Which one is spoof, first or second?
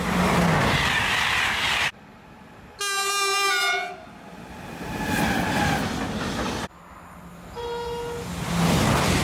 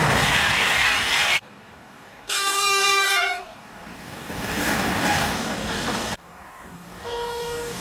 second